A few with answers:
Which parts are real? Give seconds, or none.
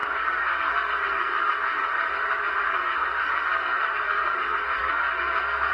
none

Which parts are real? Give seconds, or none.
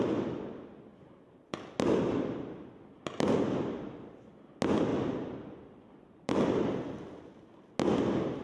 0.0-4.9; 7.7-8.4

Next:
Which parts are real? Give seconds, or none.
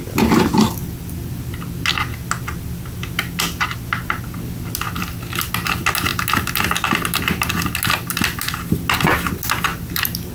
0.0-10.3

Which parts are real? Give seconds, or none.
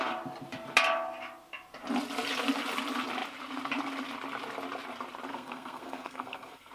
0.0-5.3